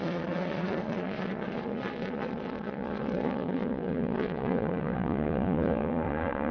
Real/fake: fake